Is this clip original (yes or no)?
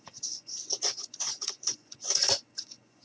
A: no